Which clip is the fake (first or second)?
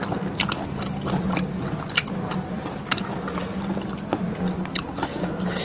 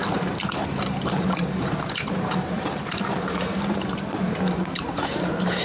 second